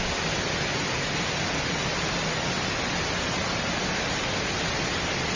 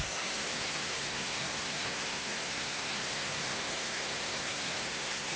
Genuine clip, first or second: first